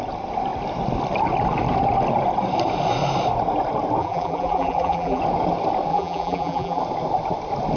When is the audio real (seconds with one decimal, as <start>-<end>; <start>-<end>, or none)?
0.0-4.0; 5.2-5.9; 6.8-7.8